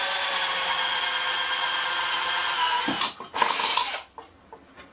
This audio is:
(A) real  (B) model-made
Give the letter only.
A